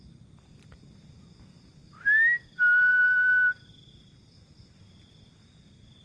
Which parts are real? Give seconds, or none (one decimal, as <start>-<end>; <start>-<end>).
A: 0.0-6.0